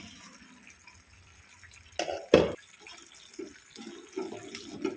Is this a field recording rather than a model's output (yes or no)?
yes